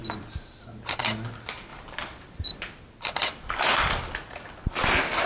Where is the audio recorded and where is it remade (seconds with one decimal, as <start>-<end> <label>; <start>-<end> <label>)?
0.0-1.0 remade; 1.0-1.7 recorded; 1.7-2.5 remade; 2.5-5.3 recorded